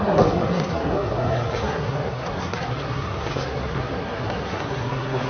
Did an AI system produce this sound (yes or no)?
yes